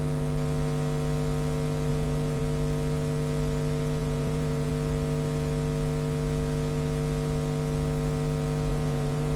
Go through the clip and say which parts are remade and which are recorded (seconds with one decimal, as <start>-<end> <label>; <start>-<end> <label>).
0.0-1.9 recorded; 1.9-2.4 remade; 2.4-4.0 recorded; 4.0-4.7 remade; 4.7-8.7 recorded; 8.7-9.4 remade